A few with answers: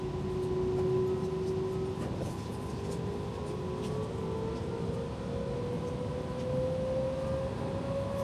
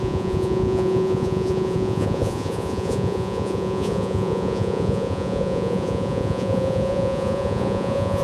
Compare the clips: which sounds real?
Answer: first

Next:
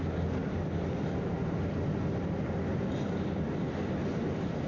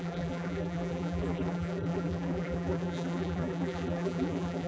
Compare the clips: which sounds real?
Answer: first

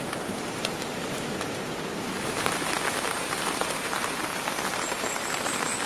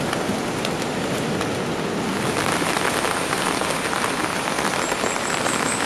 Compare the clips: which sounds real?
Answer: second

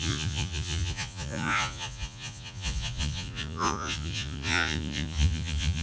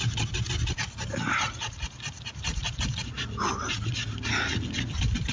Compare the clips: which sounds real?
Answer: second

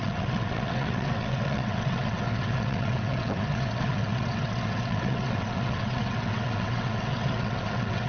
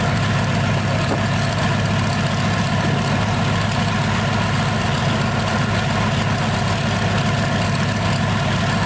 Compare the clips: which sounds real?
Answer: second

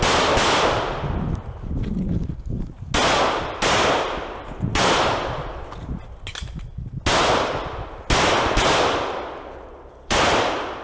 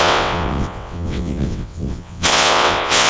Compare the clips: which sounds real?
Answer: first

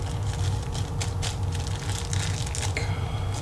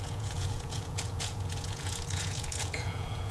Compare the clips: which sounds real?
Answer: first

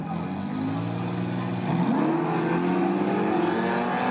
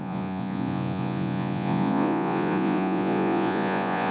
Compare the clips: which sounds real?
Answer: first